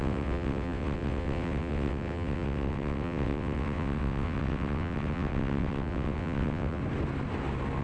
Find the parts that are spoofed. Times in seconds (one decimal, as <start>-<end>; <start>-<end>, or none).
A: 0.0-6.8